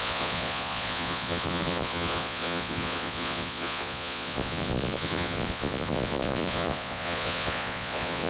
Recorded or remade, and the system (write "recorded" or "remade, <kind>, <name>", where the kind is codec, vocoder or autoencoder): remade, vocoder, Vocos